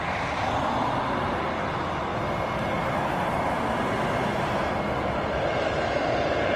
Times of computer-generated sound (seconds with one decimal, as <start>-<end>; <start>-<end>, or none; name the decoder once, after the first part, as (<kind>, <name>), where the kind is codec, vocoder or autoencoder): none